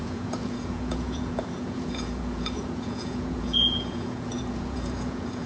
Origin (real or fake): fake